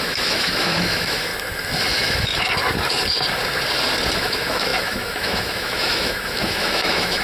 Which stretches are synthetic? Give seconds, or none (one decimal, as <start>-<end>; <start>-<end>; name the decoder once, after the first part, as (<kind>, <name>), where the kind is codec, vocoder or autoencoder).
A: 0.0-1.3 (autoencoder, DAC-VAE); 1.9-2.3; 4.2-7.2